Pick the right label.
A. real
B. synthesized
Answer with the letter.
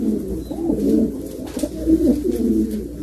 A